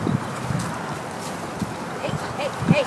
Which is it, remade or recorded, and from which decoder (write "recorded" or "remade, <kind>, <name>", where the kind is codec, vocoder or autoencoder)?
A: recorded